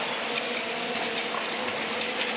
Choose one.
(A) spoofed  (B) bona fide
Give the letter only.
B